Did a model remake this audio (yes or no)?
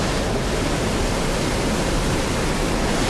no